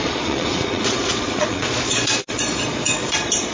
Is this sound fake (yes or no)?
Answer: yes